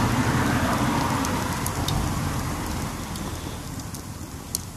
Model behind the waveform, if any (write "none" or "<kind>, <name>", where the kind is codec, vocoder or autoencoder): none